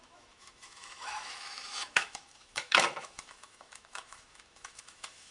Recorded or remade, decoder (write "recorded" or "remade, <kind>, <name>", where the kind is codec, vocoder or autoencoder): remade, autoencoder, DAC-VAE